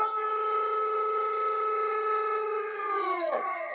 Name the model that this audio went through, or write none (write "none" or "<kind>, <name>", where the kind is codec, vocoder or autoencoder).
vocoder, HiFi-GAN